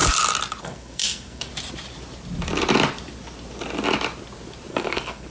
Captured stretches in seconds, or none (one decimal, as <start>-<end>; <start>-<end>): 0.0-0.6; 1.5-4.7